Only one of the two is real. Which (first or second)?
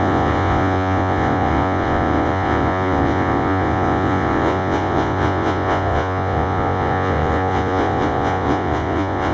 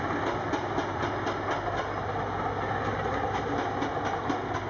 second